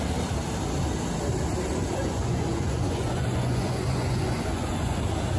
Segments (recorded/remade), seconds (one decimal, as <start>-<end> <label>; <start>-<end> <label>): 0.0-1.8 recorded; 1.8-5.0 remade; 5.0-5.4 recorded